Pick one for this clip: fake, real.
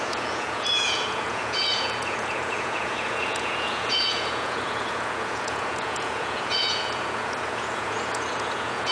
fake